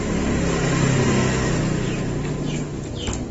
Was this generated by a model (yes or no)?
no